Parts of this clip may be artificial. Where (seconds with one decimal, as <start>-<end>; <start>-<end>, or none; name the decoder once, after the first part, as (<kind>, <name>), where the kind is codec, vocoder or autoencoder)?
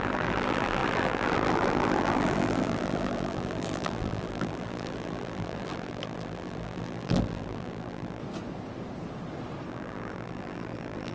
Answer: 0.0-8.2 (vocoder, BigVGAN v2); 9.7-11.1